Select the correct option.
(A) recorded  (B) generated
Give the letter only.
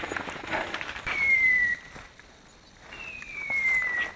A